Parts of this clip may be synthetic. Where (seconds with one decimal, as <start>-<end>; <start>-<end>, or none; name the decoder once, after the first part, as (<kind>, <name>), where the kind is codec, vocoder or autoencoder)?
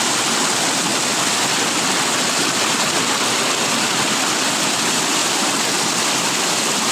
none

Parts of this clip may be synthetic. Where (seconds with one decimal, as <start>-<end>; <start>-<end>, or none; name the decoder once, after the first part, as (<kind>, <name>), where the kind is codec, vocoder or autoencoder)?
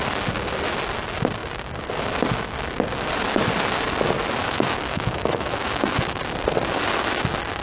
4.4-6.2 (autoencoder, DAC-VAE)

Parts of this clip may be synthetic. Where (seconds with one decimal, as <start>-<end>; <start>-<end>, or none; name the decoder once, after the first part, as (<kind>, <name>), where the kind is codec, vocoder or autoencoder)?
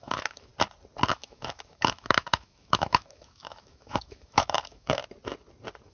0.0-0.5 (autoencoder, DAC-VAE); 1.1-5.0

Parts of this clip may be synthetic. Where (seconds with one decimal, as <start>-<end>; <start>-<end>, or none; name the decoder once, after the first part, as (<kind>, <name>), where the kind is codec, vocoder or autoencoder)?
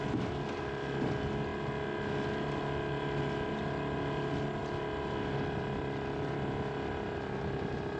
none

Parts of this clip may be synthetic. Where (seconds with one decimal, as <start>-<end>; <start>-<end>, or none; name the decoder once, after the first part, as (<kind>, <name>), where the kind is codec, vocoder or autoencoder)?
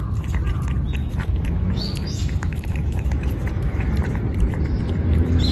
1.0-3.9 (autoencoder, DAC-VAE)